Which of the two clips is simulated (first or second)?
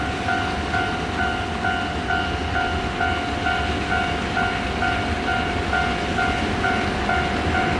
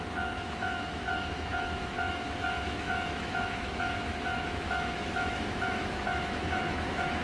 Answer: second